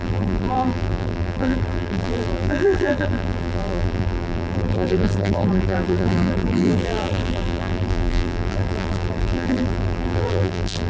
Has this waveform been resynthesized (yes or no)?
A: yes